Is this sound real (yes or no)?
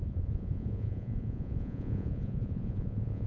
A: no